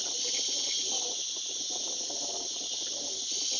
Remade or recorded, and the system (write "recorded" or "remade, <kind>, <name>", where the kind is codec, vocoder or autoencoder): recorded